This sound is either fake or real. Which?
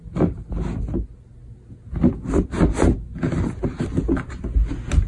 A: real